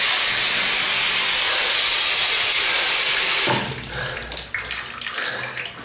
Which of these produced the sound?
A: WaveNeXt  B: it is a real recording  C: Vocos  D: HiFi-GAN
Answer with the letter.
B